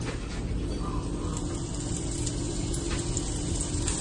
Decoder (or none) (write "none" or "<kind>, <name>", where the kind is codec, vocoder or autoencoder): none